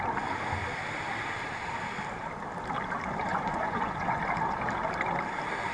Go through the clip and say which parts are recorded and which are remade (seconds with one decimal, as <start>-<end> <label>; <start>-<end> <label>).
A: 0.0-3.3 recorded; 3.3-4.2 remade; 4.2-5.7 recorded